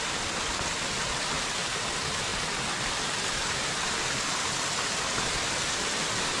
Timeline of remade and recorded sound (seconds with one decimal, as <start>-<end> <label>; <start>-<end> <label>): 0.0-6.4 recorded